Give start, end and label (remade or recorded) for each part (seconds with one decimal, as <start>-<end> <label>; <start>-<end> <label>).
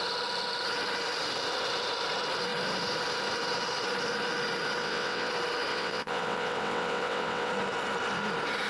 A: 0.0-4.8 recorded; 4.8-5.3 remade; 5.3-5.7 recorded; 5.7-7.5 remade; 7.5-8.7 recorded